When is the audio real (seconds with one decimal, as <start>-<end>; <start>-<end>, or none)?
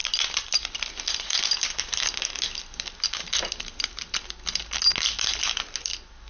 0.0-6.3